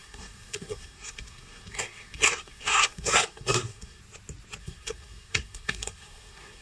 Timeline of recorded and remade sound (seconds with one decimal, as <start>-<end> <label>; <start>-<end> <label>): 0.0-4.0 remade; 4.0-4.6 recorded; 4.6-6.6 remade